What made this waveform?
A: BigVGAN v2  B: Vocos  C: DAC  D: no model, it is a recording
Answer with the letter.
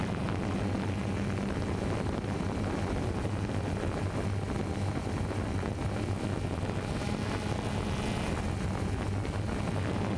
D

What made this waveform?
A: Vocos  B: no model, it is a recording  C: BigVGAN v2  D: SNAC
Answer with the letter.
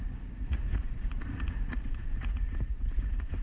A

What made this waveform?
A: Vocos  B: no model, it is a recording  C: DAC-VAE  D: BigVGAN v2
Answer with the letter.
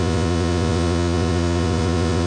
A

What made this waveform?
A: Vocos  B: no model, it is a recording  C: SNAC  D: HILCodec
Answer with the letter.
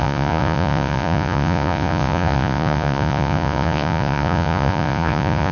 A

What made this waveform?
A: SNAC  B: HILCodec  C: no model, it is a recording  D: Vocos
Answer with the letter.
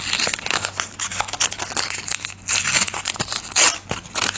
C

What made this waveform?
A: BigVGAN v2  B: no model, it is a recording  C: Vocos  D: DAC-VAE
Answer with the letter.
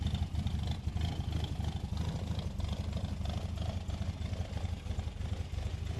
B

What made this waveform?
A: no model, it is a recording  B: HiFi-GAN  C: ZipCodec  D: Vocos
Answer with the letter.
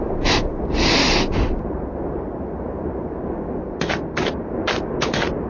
A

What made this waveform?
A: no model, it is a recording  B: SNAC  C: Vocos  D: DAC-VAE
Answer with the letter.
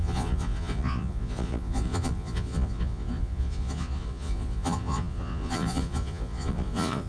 C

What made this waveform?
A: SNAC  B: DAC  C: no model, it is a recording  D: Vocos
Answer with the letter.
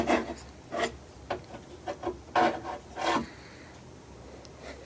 C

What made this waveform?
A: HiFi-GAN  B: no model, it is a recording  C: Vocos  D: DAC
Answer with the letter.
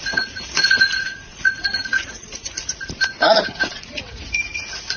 C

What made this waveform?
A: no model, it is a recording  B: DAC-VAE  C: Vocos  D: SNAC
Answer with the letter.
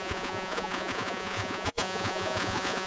C